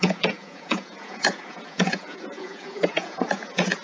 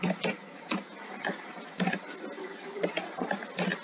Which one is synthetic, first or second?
first